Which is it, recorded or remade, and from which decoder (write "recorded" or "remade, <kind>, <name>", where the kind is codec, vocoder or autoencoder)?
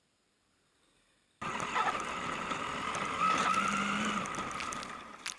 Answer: recorded